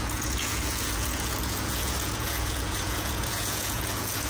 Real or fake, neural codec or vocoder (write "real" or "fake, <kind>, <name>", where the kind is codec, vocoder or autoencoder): fake, vocoder, Vocos